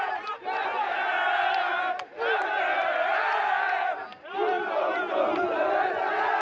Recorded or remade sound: recorded